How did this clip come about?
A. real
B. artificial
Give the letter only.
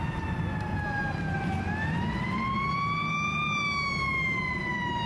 A